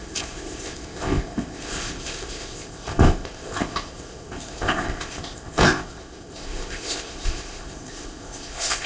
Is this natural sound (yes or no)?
no